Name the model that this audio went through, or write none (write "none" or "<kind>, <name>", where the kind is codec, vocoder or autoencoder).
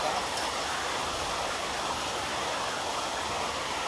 none